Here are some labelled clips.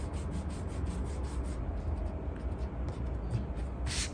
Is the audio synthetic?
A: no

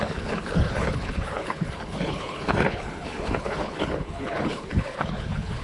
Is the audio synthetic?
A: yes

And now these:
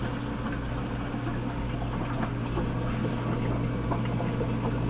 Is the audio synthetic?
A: no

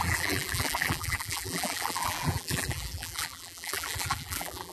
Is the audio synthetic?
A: yes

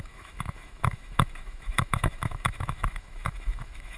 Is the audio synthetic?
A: yes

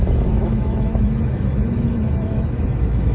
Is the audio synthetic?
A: yes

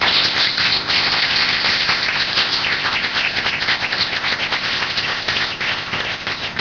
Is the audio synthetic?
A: yes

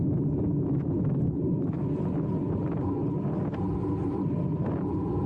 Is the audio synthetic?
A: no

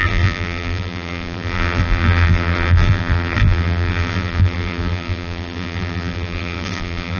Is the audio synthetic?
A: yes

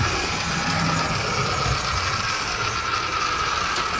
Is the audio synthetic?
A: no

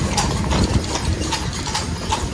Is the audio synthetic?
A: no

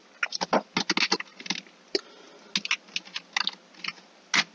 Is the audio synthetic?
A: no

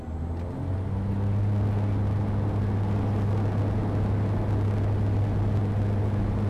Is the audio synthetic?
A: no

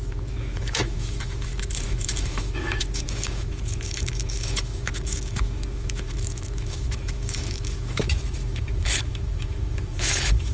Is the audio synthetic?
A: yes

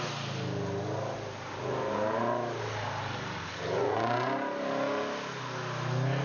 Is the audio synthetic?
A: no